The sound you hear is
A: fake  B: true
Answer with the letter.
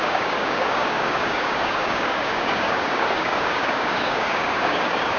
A